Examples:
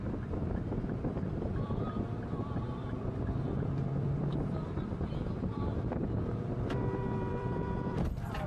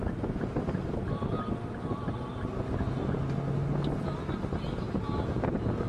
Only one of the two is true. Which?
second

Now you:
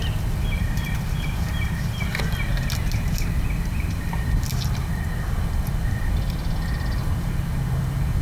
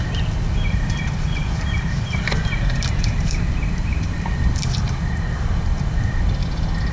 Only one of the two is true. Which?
first